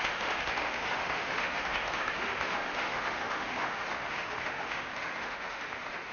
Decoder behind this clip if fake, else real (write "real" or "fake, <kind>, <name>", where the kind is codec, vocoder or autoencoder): fake, autoencoder, DAC-VAE